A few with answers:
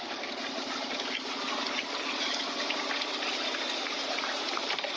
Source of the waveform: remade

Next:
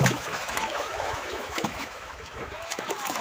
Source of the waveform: remade